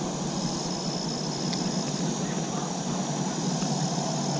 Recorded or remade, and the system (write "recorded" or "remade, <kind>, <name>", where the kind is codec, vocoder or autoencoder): recorded